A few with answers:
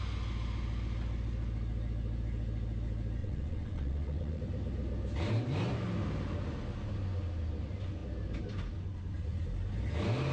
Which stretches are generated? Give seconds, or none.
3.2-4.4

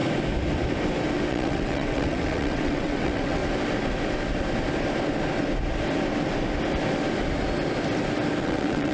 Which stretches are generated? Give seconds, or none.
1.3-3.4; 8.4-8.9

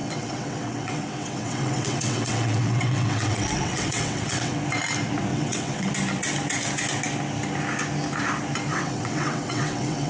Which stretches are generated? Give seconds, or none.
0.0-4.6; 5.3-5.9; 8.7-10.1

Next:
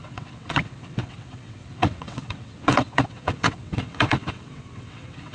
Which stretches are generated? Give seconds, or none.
0.0-5.3